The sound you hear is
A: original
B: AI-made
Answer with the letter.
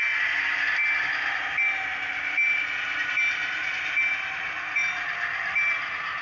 A